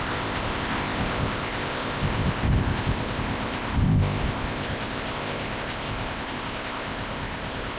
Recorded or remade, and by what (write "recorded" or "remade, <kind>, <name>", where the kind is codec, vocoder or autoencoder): remade, codec, ZipCodec